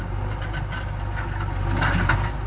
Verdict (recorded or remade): recorded